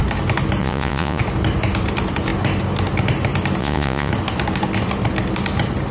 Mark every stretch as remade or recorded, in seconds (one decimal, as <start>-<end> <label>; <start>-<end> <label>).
0.0-0.6 recorded; 0.6-1.2 remade; 1.2-3.6 recorded; 3.6-4.1 remade; 4.1-5.9 recorded